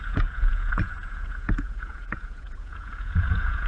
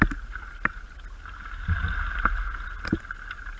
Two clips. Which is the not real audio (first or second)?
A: first